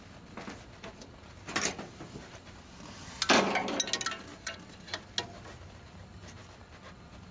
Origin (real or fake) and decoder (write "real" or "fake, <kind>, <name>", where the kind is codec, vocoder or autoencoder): real